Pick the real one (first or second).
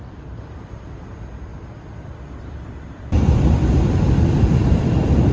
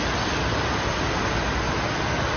second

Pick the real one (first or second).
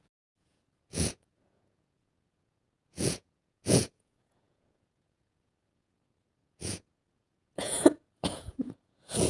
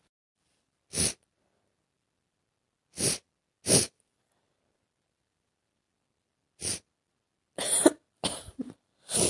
second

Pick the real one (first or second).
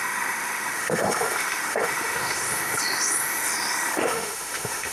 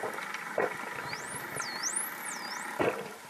second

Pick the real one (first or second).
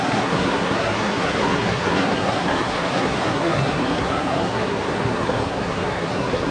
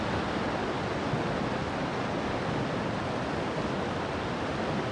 second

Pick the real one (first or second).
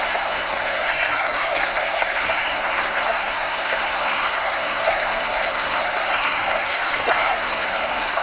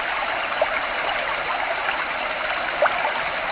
second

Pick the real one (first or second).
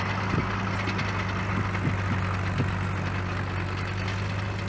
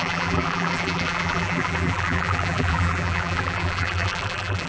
first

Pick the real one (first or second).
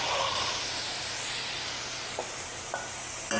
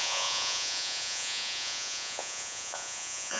first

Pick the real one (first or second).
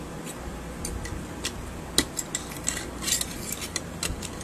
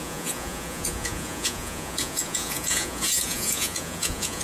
first